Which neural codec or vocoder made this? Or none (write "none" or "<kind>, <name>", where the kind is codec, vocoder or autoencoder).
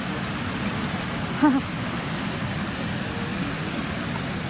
none